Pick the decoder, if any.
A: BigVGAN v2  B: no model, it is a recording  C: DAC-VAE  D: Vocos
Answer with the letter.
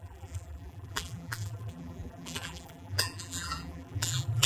A